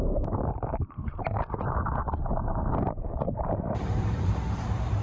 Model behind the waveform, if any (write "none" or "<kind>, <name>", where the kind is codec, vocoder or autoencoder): vocoder, BigVGAN v2